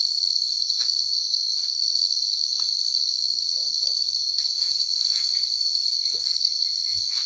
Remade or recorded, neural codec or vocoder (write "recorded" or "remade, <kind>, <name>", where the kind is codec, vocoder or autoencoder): remade, codec, SNAC